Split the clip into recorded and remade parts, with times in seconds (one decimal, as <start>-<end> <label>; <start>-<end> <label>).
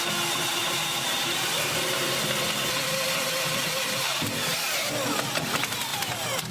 0.0-0.6 recorded; 0.6-2.2 remade; 2.2-4.5 recorded; 4.5-5.2 remade; 5.2-5.9 recorded; 5.9-6.5 remade